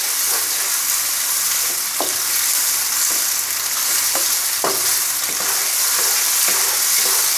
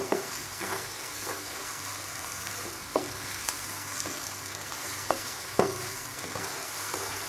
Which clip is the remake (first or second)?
second